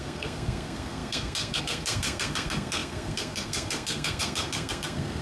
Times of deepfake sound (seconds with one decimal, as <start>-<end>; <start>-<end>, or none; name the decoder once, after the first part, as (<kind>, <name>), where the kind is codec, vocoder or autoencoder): 0.0-5.2 (codec, SNAC)